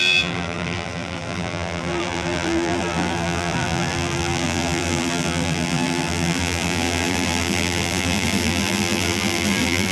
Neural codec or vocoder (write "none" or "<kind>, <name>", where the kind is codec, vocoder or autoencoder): vocoder, BigVGAN v2